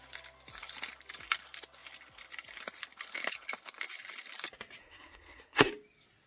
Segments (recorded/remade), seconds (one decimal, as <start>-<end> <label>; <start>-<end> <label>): 0.0-4.8 recorded; 4.8-5.7 remade; 5.7-6.3 recorded